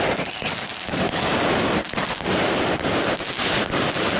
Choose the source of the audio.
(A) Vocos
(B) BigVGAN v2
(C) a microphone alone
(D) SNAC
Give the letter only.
C